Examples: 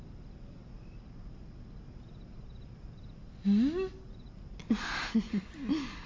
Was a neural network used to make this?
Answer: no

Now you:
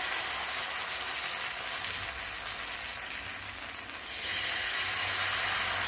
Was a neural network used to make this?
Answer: no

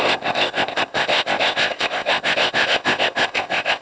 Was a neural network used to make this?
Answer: yes